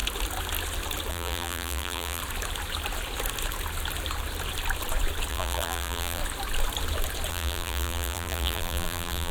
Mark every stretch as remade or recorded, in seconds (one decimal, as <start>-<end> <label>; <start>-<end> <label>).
0.0-1.1 recorded; 1.1-2.2 remade; 2.2-5.3 recorded; 5.3-6.2 remade; 6.2-7.3 recorded; 7.3-9.3 remade